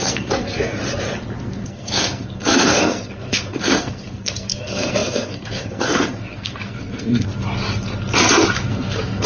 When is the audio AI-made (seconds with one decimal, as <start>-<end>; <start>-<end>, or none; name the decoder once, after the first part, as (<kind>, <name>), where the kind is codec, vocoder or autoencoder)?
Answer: 0.0-0.7 (codec, SNAC); 1.4-7.3; 8.5-9.3